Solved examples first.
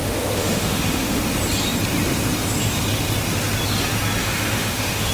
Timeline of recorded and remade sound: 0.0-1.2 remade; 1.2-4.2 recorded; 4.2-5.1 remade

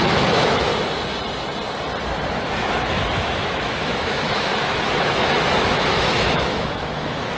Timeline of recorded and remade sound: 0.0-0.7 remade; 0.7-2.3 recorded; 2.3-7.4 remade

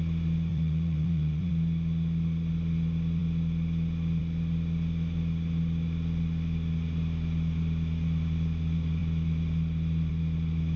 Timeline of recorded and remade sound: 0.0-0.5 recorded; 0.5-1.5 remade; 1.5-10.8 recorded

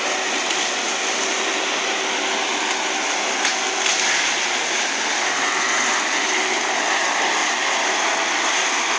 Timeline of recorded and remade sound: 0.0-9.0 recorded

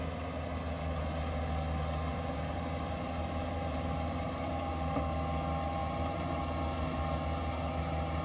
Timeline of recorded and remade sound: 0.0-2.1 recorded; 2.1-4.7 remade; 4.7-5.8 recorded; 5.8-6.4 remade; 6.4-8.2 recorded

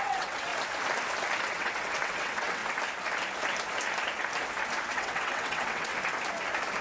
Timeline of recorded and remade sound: 0.0-0.5 remade; 0.5-1.5 recorded; 1.5-2.6 remade; 2.6-4.9 recorded; 4.9-5.9 remade; 5.9-6.8 recorded

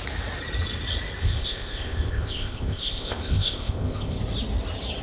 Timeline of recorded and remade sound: 0.0-1.2 recorded; 1.2-4.2 remade; 4.2-5.0 recorded

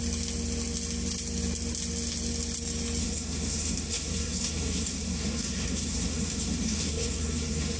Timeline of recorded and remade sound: 0.0-3.0 recorded; 3.0-7.8 remade